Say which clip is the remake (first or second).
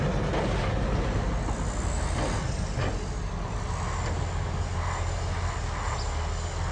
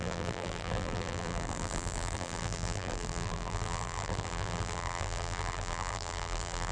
second